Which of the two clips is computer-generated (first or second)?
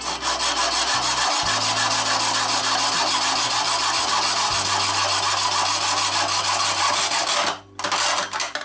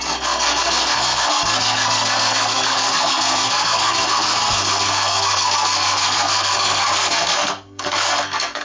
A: second